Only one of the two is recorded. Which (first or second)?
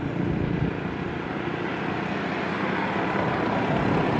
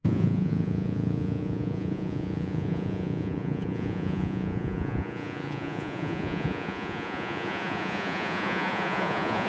first